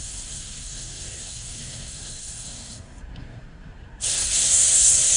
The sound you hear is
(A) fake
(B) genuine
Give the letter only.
A